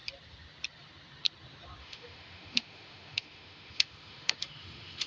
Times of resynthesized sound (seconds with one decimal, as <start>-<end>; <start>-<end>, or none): 1.8-5.1